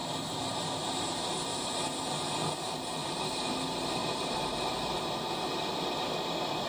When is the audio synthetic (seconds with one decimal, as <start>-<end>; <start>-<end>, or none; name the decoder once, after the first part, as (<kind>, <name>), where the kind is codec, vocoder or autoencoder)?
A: 0.0-1.7 (vocoder, BigVGAN v2); 3.0-3.5; 4.0-4.7